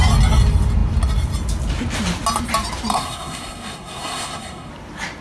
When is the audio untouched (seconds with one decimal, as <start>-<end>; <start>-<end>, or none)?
0.0-2.9; 4.7-5.2